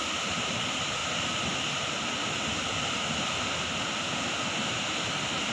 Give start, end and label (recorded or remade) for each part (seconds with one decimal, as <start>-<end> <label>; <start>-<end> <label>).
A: 0.0-5.5 recorded